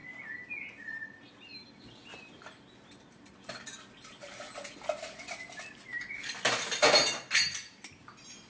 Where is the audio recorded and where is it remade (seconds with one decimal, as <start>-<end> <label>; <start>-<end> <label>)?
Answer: 0.0-8.5 recorded